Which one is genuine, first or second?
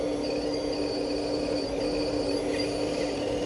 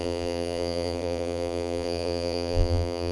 first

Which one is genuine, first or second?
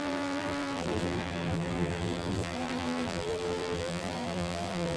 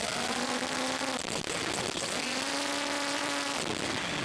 second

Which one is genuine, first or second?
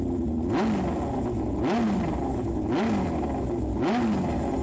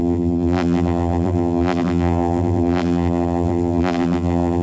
first